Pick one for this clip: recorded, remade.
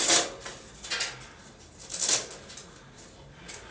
recorded